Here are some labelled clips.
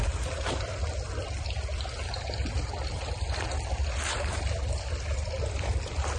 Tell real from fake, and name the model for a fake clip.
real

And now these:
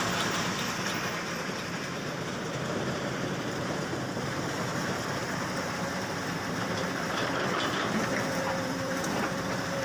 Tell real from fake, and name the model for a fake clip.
fake, vocoder, BigVGAN v2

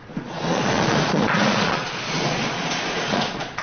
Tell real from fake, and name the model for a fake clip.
fake, vocoder, Vocos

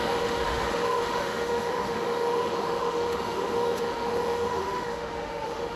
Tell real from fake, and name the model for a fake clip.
fake, autoencoder, DAC-VAE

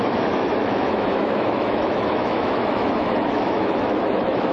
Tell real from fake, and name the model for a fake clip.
fake, autoencoder, DAC-VAE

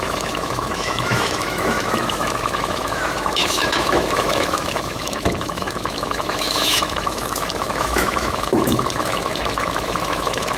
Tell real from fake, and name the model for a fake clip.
fake, autoencoder, DAC-VAE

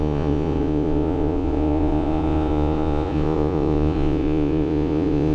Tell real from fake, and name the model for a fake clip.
fake, vocoder, Vocos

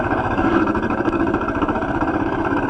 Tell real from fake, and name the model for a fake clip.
fake, codec, DAC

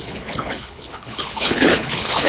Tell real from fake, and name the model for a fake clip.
fake, codec, HILCodec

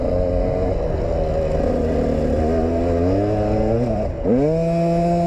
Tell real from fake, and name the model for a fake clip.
real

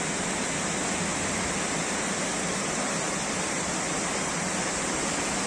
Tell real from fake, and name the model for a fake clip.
real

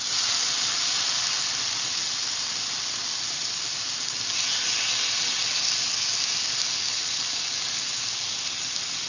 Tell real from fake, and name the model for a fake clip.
real